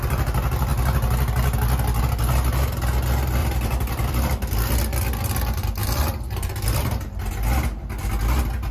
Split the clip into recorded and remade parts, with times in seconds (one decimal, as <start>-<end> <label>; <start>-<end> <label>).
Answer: 0.0-3.4 recorded; 3.4-4.8 remade; 4.8-5.8 recorded; 5.8-7.3 remade; 7.3-8.7 recorded